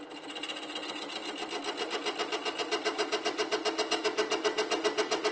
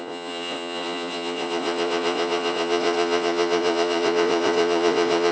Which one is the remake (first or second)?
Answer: second